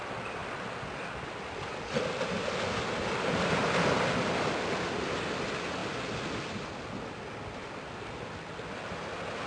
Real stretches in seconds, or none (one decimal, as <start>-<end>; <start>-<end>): 0.0-9.5